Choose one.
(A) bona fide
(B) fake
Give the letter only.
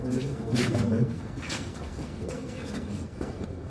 B